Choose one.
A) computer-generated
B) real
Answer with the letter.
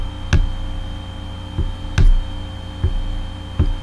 B